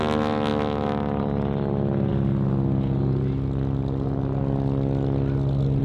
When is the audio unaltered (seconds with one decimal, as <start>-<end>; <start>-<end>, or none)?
0.0-5.8